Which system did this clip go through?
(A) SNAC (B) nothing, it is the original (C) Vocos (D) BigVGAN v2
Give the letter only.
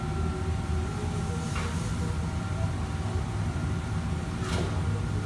B